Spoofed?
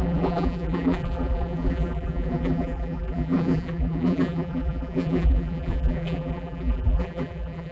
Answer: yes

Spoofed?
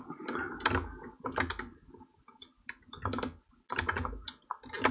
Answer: no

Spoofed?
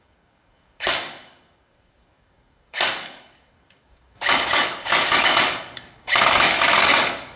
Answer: yes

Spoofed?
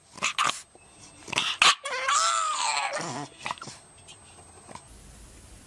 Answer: no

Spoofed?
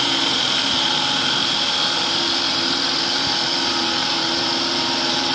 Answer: yes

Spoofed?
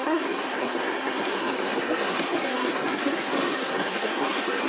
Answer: yes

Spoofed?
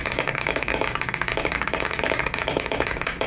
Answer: yes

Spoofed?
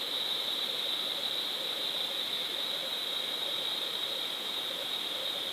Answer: yes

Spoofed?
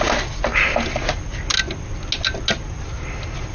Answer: no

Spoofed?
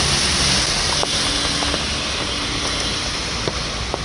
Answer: no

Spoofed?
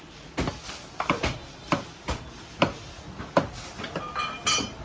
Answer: no